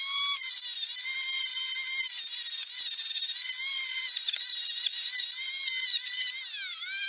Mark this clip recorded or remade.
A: recorded